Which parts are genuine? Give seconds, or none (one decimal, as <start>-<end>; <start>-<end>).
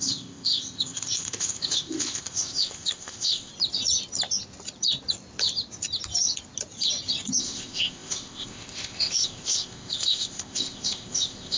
3.5-7.4